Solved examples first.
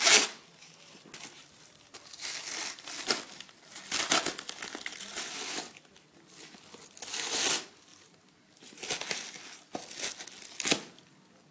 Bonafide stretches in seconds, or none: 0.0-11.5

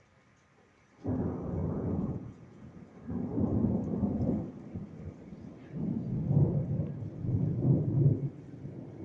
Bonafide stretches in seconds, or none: 0.0-1.6; 2.7-9.0

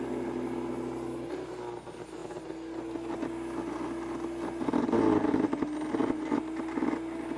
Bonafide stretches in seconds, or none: 0.0-7.4

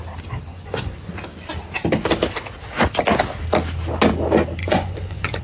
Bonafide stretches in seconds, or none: 0.0-0.5; 1.1-4.6

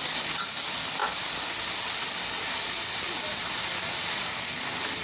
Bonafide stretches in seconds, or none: 0.0-5.0

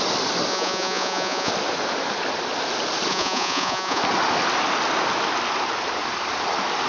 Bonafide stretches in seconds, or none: 0.0-0.5; 1.5-3.1; 4.0-6.9

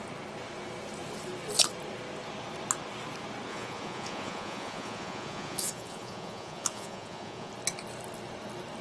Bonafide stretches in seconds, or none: 0.0-3.5; 7.5-8.8

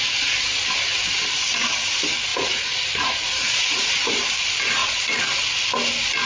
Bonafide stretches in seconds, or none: 0.0-2.3; 3.9-6.3